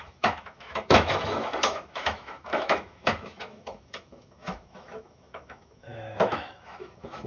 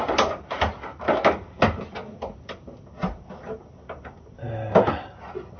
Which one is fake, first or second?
first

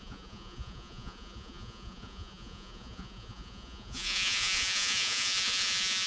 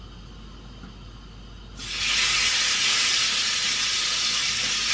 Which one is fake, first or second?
first